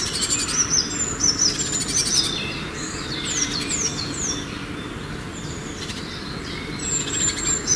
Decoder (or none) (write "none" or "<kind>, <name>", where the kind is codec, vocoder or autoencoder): none